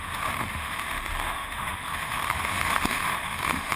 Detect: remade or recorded remade